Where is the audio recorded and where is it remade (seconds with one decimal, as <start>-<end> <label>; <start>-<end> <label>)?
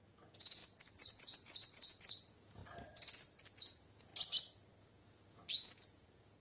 0.0-0.6 remade; 0.6-1.1 recorded; 1.1-2.6 remade; 2.6-3.6 recorded; 3.6-4.1 remade; 4.1-4.8 recorded; 4.8-6.4 remade